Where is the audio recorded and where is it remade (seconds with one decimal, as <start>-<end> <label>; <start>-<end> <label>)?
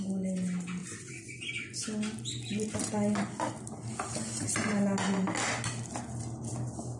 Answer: 0.0-0.8 recorded; 0.8-1.5 remade; 1.5-7.0 recorded